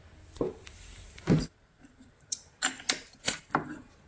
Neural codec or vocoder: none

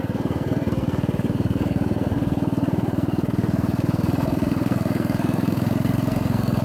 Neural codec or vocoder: codec, SNAC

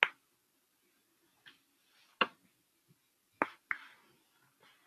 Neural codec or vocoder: none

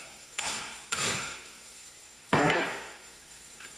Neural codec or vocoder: codec, SNAC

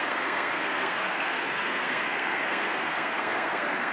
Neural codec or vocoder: codec, SNAC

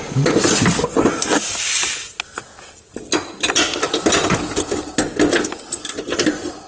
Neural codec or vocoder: none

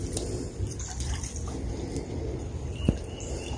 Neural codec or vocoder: none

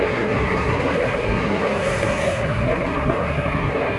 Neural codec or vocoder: codec, SNAC